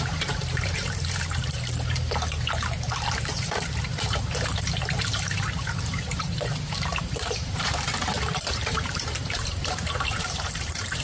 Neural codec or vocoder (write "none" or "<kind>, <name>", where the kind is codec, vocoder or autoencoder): vocoder, BigVGAN v2